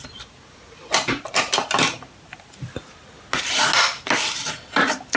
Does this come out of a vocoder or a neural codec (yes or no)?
no